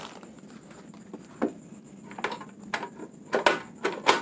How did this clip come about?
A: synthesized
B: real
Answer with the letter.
B